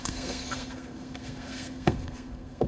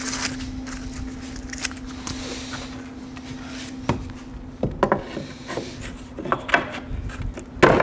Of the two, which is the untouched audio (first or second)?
second